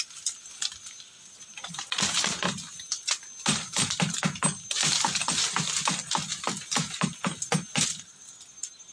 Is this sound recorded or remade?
recorded